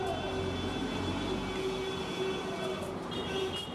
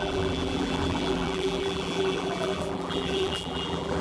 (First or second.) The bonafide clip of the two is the first